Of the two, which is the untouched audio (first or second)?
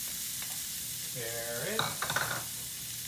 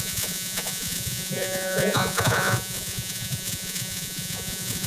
first